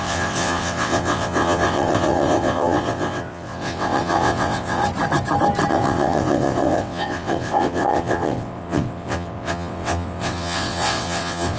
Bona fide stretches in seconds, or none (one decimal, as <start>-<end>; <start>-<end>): 4.8-5.7